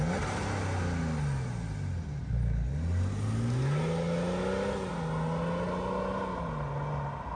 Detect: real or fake real